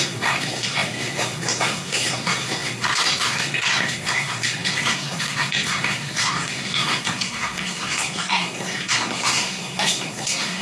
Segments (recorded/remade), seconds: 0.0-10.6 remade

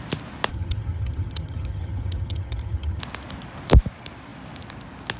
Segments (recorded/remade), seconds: 0.0-0.5 recorded; 0.5-3.0 remade; 3.0-5.2 recorded

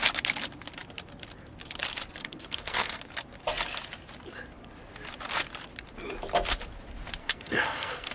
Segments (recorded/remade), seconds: 0.0-2.2 recorded; 2.2-3.0 remade; 3.0-7.2 recorded; 7.2-8.1 remade